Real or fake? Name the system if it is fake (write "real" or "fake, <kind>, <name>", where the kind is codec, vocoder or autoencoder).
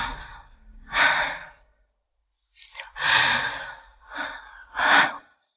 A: real